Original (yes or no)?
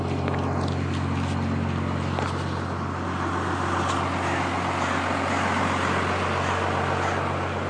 yes